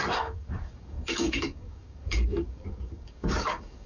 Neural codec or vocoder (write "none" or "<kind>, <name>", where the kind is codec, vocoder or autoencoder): codec, DAC